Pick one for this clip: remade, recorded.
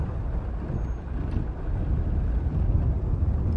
recorded